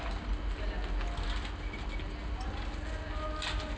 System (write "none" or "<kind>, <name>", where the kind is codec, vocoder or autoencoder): none